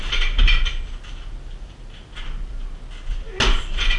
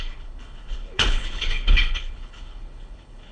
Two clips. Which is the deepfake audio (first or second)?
second